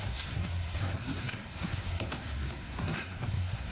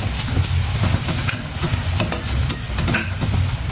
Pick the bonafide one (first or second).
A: second